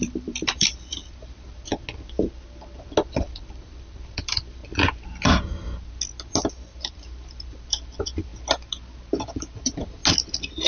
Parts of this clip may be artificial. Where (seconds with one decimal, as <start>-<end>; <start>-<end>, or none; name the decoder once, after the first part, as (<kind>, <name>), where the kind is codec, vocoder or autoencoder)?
0.0-1.7 (vocoder, BigVGAN v2); 3.1-4.6; 6.5-8.3; 9.6-10.0